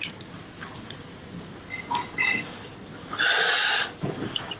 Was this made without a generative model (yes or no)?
yes